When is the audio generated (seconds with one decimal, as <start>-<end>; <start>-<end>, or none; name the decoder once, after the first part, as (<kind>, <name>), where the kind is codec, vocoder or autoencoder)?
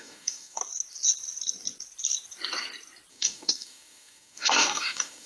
0.0-0.6 (codec, DAC); 3.1-5.3